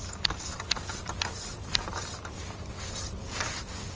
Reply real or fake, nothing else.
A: real